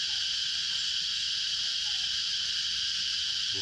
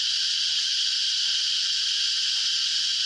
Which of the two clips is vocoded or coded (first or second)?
first